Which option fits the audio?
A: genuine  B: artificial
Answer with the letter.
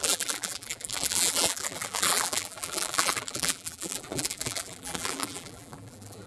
B